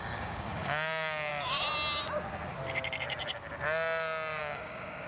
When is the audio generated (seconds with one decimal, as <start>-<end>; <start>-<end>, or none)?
0.0-1.3; 4.4-5.1

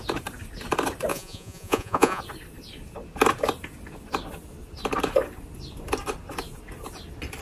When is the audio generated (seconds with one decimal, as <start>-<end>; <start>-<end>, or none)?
1.1-2.2

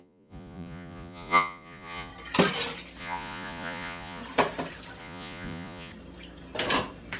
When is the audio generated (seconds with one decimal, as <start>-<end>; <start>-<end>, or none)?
0.0-2.1; 3.0-4.2; 5.0-5.9

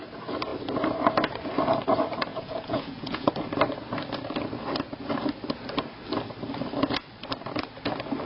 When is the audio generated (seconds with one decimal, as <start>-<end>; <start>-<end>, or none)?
2.3-3.3

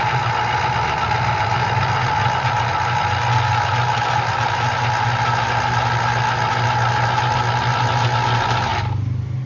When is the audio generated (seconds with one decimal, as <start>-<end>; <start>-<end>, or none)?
none

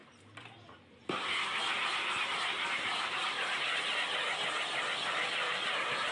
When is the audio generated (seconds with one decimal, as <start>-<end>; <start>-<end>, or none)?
0.0-3.7

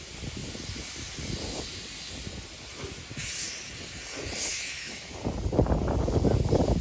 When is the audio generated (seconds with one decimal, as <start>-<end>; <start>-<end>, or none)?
4.5-5.1

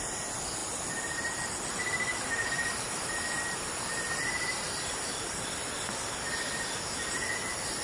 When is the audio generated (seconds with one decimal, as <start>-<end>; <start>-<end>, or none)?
2.1-5.7